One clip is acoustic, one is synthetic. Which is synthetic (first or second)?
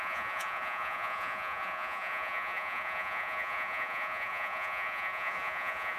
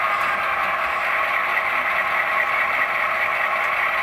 first